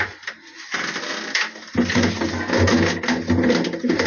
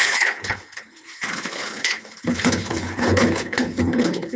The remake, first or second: second